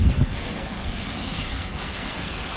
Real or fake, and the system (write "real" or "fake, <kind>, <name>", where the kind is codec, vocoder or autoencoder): fake, codec, SNAC